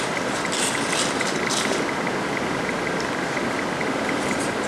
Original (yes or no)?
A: yes